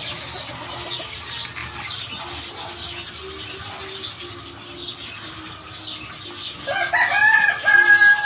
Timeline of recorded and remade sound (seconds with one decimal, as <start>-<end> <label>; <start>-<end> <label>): 0.0-8.3 recorded